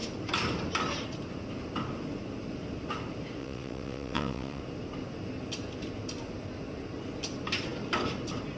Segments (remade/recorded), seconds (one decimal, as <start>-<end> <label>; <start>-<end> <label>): 0.0-3.4 recorded; 3.4-4.6 remade; 4.6-8.6 recorded